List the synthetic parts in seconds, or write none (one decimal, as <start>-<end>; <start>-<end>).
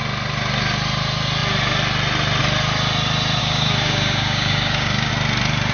3.4-5.1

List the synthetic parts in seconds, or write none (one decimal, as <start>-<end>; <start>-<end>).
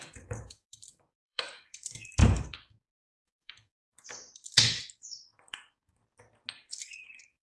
0.0-6.0; 6.7-7.4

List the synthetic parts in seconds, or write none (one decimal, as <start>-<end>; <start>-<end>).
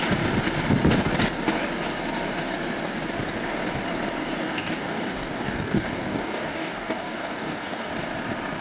4.4-7.9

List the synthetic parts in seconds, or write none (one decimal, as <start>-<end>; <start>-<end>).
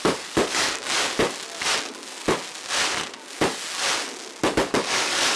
0.0-1.2; 4.4-5.4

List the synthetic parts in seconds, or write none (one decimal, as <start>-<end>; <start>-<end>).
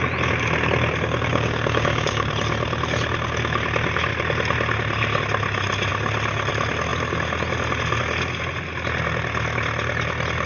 1.3-2.3